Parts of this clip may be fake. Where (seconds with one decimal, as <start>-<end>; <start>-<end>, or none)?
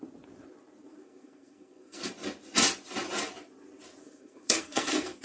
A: 0.9-2.1; 4.0-5.2